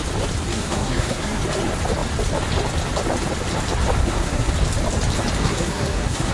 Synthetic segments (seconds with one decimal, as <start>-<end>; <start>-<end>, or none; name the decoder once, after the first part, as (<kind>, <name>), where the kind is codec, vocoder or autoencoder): 0.5-1.4 (codec, SNAC); 4.0-4.5; 5.4-6.3